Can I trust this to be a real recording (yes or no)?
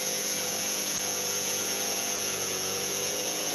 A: no